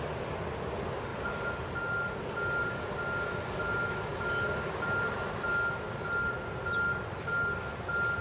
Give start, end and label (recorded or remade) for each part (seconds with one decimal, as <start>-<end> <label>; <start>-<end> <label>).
0.0-8.2 recorded